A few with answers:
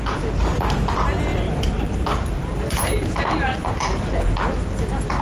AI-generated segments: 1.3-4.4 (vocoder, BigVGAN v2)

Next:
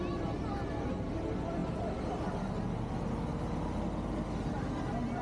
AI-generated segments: none

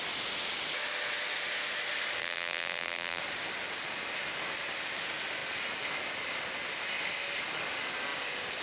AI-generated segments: 2.2-3.2 (vocoder, BigVGAN v2)

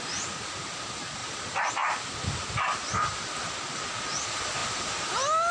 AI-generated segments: 1.2-1.7 (vocoder, BigVGAN v2)

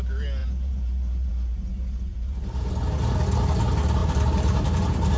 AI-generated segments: 0.4-1.3 (vocoder, BigVGAN v2); 2.1-2.7; 4.0-5.2

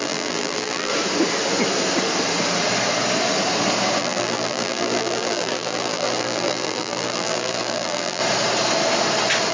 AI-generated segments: 0.0-0.9 (vocoder, BigVGAN v2); 4.0-8.2

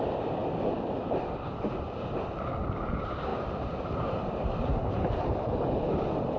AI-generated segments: 3.3-6.0 (vocoder, BigVGAN v2)

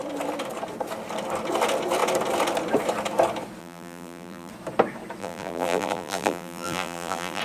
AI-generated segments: 3.6-4.5 (vocoder, BigVGAN v2); 5.2-7.4